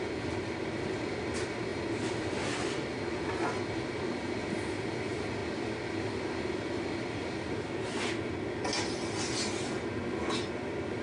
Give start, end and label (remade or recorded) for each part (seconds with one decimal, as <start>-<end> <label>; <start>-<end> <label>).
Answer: 0.0-11.0 recorded

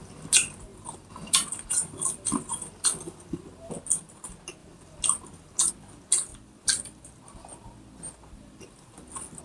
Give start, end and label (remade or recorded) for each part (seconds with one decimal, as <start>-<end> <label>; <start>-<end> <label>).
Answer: 0.0-0.7 recorded; 0.7-3.7 remade; 3.7-4.6 recorded; 4.6-5.7 remade; 5.7-6.3 recorded; 6.3-9.4 remade

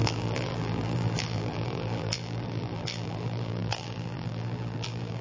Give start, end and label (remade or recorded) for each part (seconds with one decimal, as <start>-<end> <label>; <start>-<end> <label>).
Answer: 0.0-5.2 remade

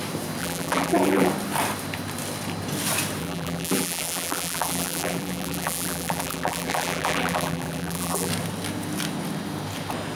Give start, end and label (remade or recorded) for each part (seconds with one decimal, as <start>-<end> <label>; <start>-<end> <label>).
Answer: 0.0-0.4 recorded; 0.4-1.3 remade; 1.3-3.2 recorded; 3.2-8.3 remade; 8.3-10.2 recorded

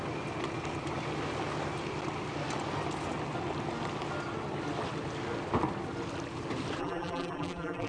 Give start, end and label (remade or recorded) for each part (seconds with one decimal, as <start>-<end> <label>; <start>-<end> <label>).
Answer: 0.0-6.8 recorded; 6.8-7.9 remade

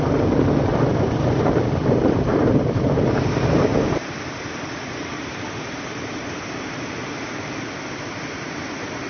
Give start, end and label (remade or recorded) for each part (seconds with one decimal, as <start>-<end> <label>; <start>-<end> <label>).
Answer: 0.0-0.7 recorded; 0.7-3.0 remade; 3.0-3.7 recorded; 3.7-7.7 remade; 7.7-9.1 recorded

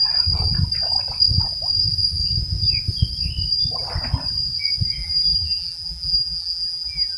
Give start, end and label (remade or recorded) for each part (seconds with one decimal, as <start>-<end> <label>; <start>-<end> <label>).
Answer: 0.0-5.0 recorded; 5.0-7.2 remade

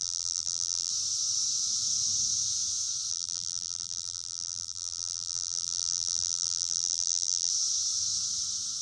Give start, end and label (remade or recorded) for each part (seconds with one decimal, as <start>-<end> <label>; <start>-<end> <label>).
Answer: 0.0-0.9 remade; 0.9-3.1 recorded; 3.1-7.5 remade; 7.5-8.8 recorded